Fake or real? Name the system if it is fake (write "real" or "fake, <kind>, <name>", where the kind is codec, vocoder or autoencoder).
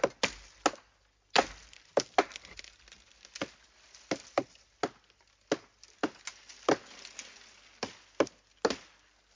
real